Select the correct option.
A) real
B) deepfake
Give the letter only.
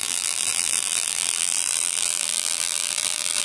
B